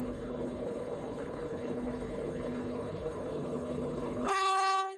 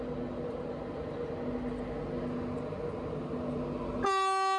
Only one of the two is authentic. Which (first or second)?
second